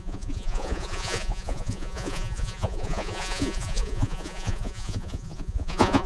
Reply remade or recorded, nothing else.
remade